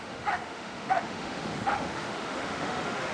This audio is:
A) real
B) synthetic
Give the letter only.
B